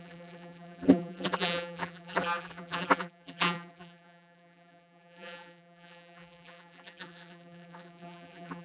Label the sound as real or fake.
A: fake